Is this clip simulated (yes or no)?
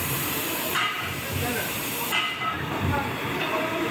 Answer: yes